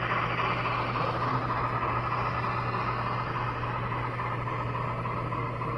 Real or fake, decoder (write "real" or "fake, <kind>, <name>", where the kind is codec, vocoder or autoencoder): real